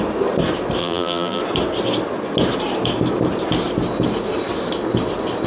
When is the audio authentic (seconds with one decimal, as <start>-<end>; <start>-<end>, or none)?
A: 0.0-0.8; 1.4-5.5